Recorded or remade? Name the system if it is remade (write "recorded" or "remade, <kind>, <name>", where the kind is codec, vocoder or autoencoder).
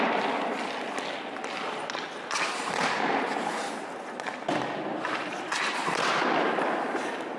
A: recorded